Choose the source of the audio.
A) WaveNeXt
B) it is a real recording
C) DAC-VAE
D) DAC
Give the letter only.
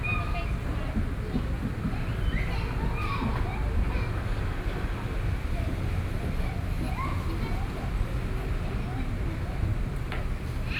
B